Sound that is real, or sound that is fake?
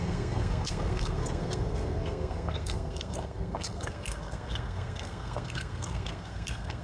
fake